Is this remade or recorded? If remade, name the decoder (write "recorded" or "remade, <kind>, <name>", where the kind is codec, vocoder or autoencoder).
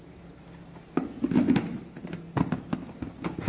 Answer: recorded